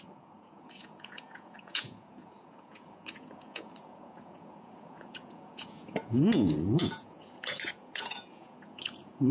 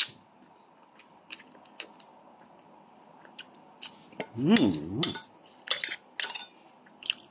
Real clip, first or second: second